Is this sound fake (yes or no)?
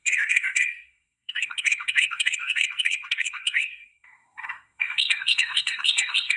yes